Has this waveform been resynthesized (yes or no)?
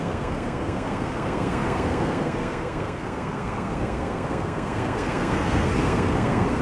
yes